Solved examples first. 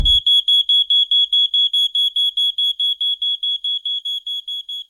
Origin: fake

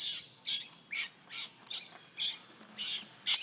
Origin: real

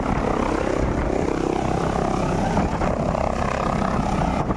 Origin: real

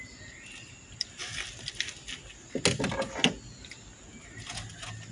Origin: real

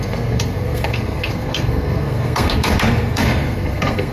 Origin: fake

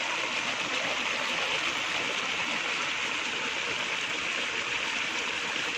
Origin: real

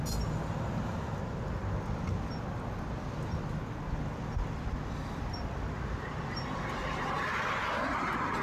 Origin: real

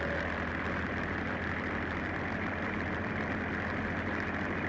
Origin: fake